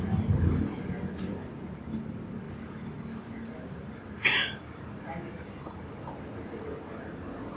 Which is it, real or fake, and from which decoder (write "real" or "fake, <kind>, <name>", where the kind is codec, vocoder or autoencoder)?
real